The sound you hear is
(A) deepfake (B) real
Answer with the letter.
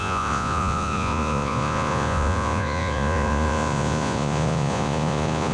A